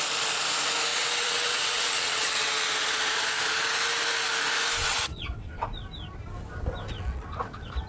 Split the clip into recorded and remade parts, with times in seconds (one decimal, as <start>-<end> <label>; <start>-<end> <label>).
0.0-0.9 recorded; 0.9-2.3 remade; 2.3-4.8 recorded; 4.8-5.6 remade; 5.6-7.9 recorded